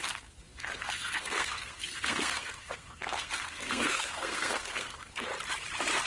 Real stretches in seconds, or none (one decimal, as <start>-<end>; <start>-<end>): 5.3-6.1